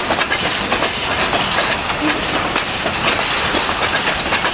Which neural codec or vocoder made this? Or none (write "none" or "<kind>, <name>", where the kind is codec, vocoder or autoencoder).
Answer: none